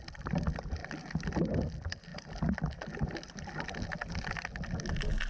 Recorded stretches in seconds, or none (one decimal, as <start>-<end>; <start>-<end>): 0.0-5.3